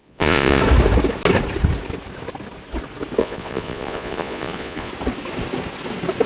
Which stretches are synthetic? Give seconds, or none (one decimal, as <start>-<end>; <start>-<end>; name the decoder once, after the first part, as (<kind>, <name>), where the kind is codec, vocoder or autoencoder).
0.0-0.6 (vocoder, Vocos); 3.2-4.9